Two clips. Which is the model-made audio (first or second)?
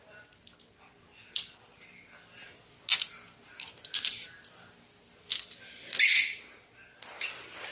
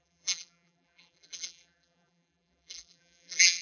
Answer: second